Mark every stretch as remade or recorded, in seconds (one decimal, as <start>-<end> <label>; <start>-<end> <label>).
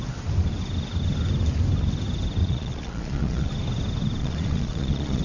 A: 0.0-2.4 recorded; 2.4-3.5 remade; 3.5-4.2 recorded; 4.2-5.2 remade